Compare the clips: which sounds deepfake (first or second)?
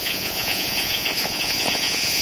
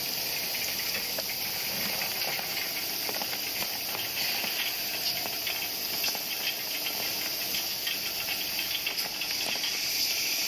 first